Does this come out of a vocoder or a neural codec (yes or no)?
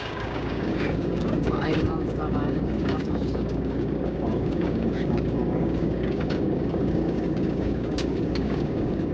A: yes